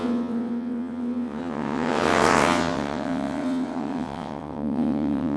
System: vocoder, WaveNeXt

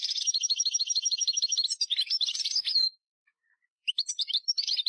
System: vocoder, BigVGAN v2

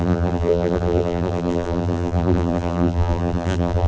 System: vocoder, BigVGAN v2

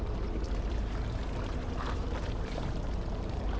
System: vocoder, BigVGAN v2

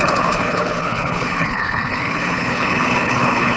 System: codec, HILCodec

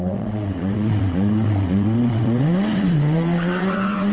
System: vocoder, WaveNeXt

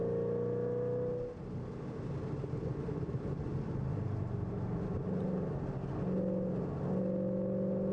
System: none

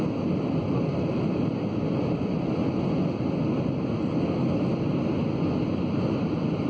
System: none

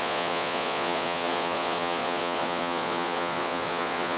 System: vocoder, Vocos